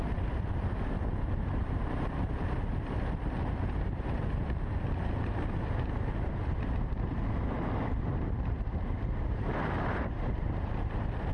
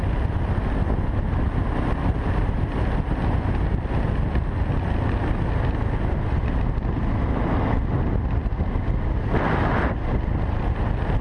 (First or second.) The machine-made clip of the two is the first